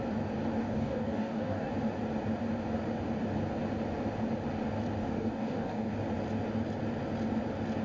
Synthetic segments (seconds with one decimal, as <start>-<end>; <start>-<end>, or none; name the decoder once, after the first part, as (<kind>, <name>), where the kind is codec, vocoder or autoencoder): 0.6-1.7 (codec, DAC); 5.0-5.9